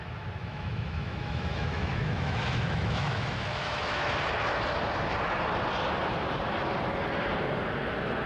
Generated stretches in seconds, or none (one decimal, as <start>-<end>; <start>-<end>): 0.4-4.1